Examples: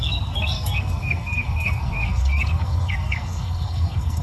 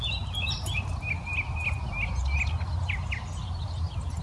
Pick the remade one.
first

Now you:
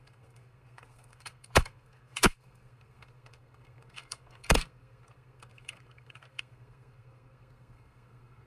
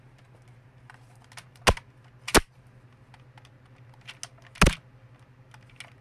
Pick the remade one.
first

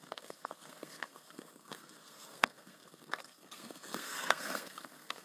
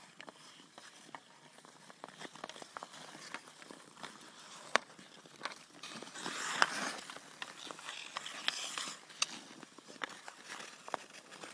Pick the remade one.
first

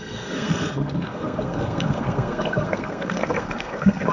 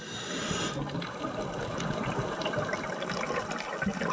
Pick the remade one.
first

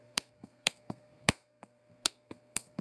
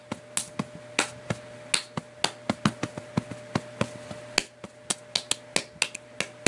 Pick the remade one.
first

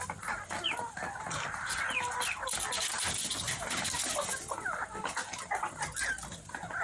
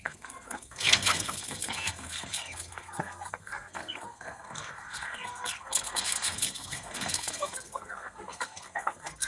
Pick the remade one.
second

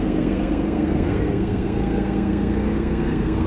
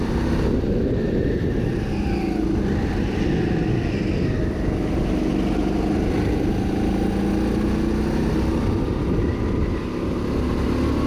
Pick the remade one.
first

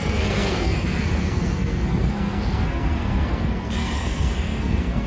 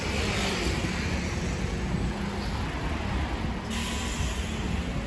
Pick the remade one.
first